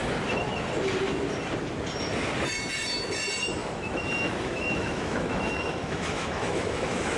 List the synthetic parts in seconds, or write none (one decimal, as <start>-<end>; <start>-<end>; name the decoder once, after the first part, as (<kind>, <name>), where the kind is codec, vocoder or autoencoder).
3.6-7.2 (autoencoder, DAC-VAE)